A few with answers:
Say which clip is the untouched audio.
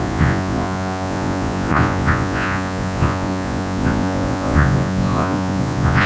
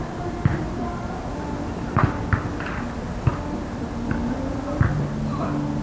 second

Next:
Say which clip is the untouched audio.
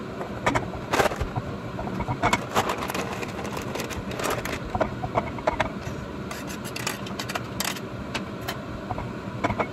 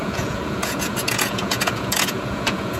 first